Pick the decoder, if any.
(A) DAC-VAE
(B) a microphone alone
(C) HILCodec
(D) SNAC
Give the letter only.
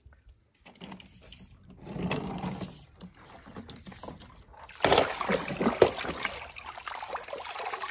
B